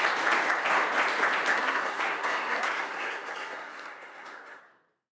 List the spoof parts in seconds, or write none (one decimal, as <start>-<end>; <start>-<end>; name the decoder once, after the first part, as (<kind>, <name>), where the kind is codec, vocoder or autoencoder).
1.5-4.6 (codec, SNAC)